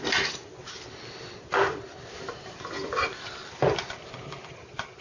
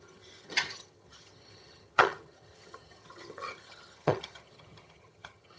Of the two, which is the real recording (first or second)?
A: first